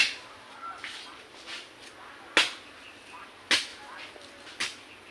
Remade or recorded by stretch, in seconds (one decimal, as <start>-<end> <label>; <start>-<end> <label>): 0.0-5.1 recorded